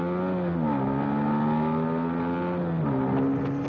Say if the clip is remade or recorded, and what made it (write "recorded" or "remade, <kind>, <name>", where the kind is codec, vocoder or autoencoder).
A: recorded